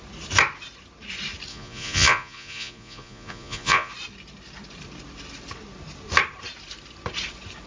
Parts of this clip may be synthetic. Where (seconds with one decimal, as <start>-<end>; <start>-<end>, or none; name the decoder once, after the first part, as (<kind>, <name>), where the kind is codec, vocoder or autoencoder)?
1.5-3.9 (vocoder, Vocos)